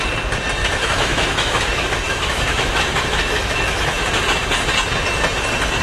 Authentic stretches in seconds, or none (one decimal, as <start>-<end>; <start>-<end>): 0.0-0.6; 4.1-5.8